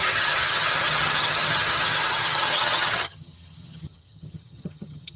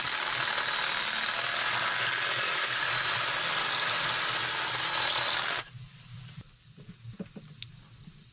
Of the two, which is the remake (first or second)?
first